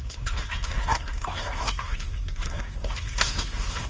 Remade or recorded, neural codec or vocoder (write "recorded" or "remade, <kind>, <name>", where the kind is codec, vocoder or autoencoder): remade, codec, SNAC